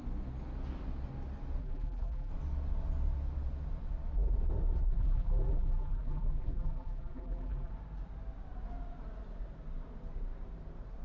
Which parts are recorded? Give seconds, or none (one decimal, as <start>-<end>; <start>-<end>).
0.0-1.6; 2.3-4.9; 7.7-11.0